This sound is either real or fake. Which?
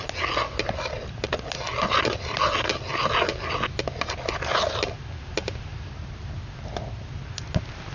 real